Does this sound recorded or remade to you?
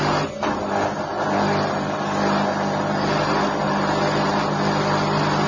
recorded